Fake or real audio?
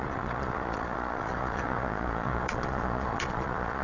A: fake